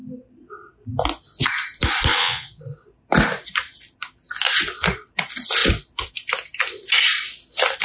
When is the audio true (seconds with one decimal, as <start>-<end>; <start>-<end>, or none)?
0.0-2.1; 2.6-7.8